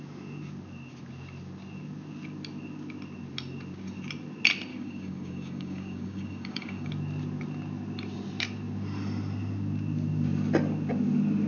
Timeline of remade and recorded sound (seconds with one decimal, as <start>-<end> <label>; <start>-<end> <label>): 0.0-4.7 recorded; 4.7-6.9 remade; 6.9-11.5 recorded

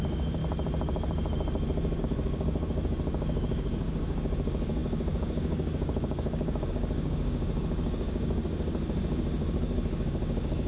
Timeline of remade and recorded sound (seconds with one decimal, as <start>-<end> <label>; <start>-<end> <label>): 0.0-0.4 remade; 0.4-2.0 recorded; 2.0-10.7 remade

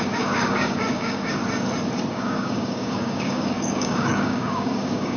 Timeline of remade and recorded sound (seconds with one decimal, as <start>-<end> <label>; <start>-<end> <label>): 0.0-1.4 remade; 1.4-2.1 recorded; 2.1-5.2 remade

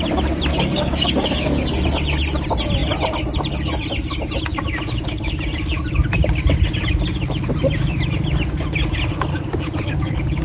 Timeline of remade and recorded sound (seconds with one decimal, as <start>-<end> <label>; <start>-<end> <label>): 0.0-0.5 recorded; 0.5-1.8 remade; 1.8-9.3 recorded; 9.3-10.4 remade

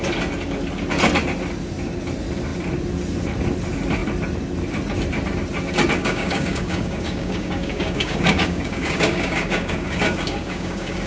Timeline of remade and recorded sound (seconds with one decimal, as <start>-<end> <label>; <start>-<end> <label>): 0.0-6.0 recorded; 6.0-11.1 remade